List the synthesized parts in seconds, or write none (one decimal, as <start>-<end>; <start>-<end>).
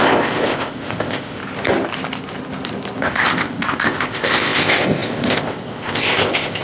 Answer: 0.0-1.4; 3.0-6.6